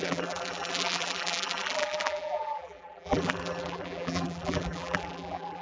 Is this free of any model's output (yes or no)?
no